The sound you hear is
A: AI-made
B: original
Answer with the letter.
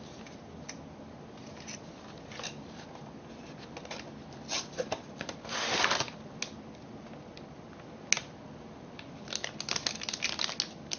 B